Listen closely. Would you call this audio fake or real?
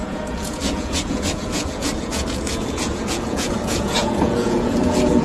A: fake